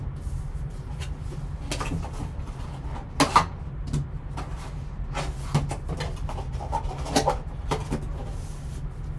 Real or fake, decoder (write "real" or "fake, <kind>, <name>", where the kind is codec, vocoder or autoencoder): real